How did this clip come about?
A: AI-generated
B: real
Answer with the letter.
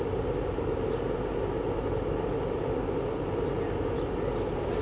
B